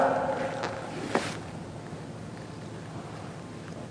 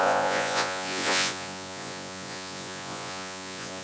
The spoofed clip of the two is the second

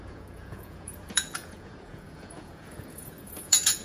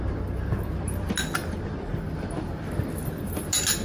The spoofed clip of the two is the first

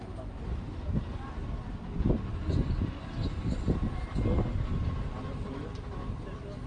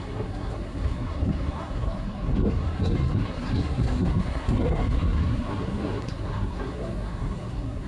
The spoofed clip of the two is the second